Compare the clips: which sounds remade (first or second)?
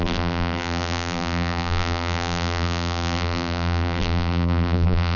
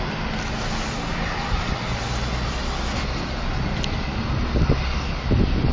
first